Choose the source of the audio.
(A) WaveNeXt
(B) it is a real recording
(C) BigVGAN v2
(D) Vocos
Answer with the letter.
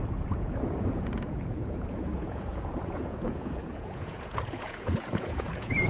D